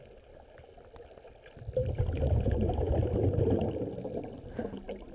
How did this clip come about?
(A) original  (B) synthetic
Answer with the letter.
A